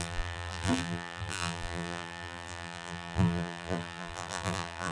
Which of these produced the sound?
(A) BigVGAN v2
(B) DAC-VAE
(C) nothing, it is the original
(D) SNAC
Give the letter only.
A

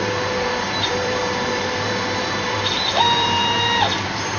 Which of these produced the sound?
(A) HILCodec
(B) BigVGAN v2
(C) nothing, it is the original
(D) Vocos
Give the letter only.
B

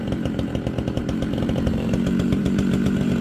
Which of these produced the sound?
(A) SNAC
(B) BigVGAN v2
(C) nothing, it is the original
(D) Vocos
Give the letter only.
B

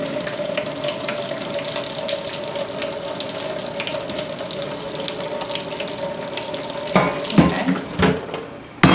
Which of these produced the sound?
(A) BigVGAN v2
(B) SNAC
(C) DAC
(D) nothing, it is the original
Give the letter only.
D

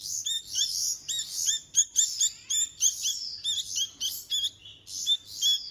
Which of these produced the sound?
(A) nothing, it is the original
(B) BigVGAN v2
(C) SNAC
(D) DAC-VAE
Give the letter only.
A